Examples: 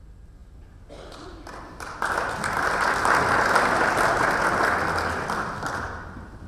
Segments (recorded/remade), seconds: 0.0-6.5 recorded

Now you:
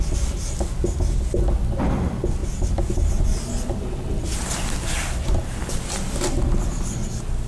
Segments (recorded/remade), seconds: 0.0-7.5 recorded

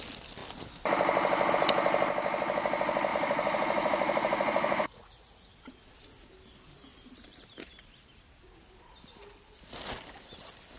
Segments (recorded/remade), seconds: 0.0-3.1 recorded; 3.1-5.5 remade; 5.5-10.8 recorded